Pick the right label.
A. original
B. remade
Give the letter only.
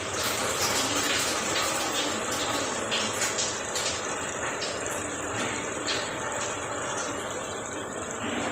B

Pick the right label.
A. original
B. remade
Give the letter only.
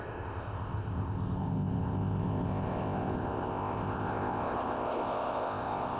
B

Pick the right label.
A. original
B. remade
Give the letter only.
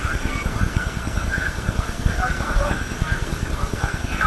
B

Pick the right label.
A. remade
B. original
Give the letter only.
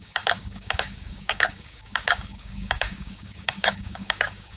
A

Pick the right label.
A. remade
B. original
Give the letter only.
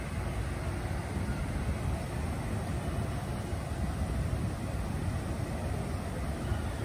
B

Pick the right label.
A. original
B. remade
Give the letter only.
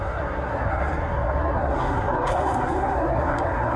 B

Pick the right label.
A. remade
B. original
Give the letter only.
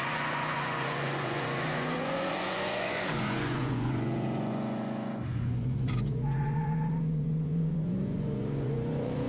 A